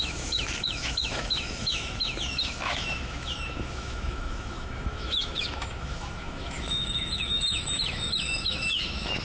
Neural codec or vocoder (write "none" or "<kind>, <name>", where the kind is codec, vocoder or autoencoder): autoencoder, DAC-VAE